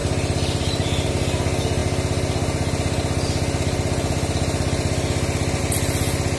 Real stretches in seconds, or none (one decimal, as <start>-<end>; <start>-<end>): 1.1-6.4